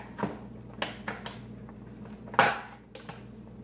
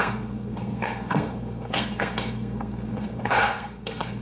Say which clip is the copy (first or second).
second